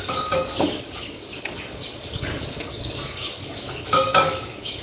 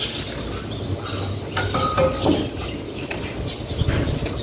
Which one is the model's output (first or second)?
first